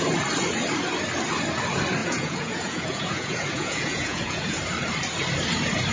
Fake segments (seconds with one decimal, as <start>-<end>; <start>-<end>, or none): 2.0-4.6